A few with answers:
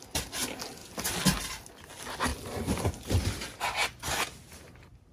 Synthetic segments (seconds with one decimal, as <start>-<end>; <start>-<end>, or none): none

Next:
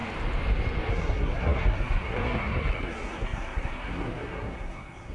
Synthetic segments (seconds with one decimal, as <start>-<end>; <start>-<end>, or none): 0.9-5.1

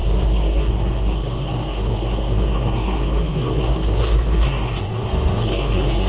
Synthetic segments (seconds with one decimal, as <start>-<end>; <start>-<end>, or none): 0.0-6.1

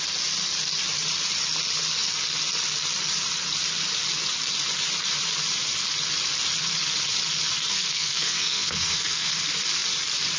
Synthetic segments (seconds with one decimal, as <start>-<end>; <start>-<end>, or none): 7.7-9.3

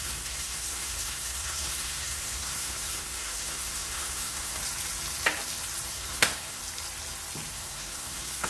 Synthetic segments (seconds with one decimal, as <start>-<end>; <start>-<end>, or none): 0.0-4.6; 5.9-6.6; 7.5-8.5